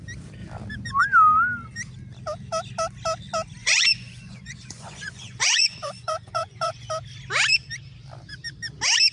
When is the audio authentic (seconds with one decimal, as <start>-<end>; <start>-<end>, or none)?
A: 0.0-3.6; 6.9-9.1